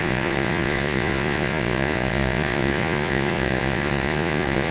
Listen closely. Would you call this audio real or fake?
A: fake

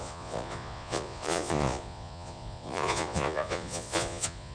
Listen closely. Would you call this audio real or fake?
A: fake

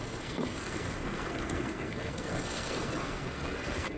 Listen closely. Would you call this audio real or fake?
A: fake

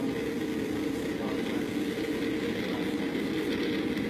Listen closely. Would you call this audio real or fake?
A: real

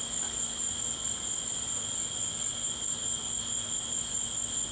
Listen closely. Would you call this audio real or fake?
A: real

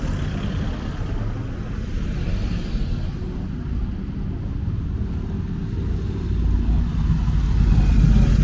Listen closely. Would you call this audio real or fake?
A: real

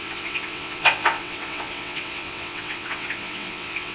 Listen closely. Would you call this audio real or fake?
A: fake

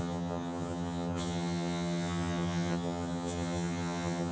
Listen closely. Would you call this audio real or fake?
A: fake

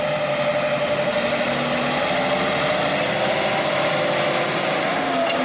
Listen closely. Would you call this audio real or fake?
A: real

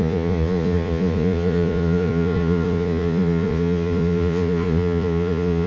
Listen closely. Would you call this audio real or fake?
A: fake